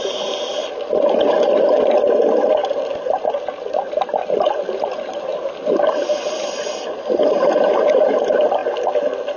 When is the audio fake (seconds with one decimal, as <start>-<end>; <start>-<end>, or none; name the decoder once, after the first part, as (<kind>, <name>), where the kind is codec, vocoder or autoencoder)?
none